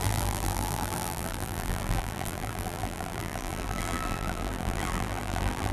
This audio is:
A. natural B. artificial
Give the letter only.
B